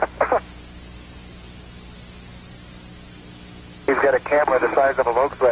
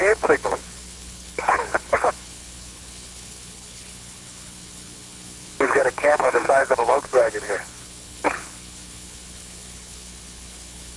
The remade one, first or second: second